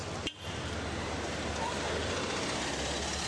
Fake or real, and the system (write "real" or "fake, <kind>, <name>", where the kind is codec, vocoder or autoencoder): real